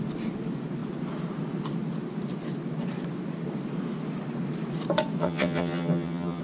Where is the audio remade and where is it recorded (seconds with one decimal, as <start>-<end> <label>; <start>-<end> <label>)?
0.0-5.2 recorded; 5.2-6.4 remade